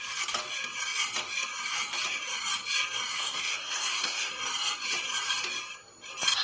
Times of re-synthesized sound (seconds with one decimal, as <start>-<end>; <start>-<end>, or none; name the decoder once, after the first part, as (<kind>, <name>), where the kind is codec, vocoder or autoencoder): 3.1-4.3 (codec, SNAC)